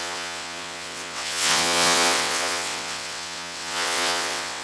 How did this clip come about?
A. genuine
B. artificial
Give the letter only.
B